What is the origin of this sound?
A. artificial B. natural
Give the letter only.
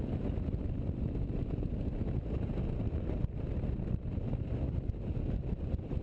B